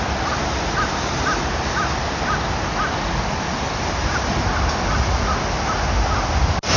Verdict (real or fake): real